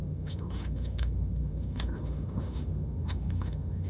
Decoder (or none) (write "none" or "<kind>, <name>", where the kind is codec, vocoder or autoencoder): autoencoder, DAC-VAE